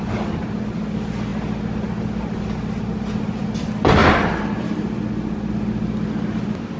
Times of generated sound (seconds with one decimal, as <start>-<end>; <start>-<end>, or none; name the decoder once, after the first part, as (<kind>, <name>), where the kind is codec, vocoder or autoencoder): none